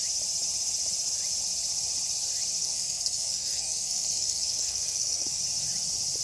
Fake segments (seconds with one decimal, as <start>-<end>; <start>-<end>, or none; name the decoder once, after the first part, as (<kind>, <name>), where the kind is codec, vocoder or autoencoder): 2.6-5.4 (codec, SNAC)